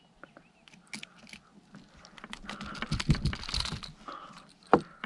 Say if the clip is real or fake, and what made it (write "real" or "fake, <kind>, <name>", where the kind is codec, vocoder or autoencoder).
real